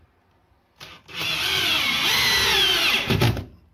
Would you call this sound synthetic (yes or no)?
no